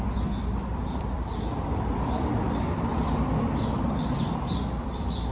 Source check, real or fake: fake